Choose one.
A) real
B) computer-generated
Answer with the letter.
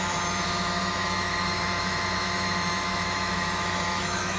B